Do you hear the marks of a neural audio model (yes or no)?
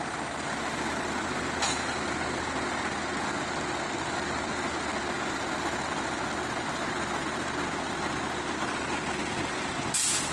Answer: no